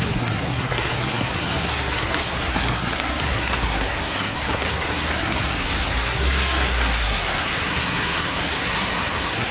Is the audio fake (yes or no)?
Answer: yes